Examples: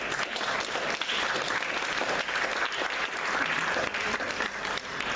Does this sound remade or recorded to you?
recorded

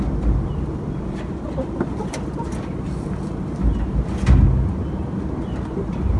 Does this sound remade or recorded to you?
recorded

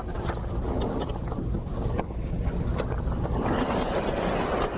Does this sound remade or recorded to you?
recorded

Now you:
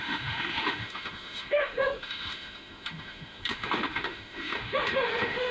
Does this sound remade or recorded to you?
remade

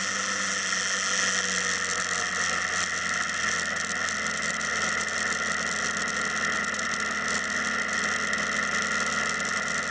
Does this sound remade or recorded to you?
recorded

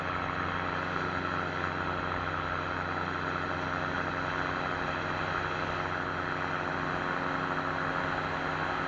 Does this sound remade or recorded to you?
recorded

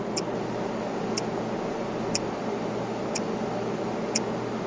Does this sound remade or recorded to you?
recorded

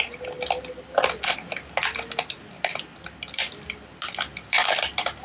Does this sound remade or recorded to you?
recorded